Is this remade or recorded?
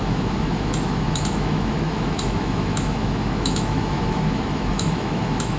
remade